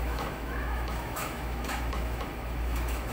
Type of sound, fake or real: fake